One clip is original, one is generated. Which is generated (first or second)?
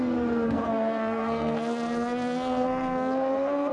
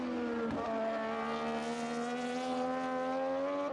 first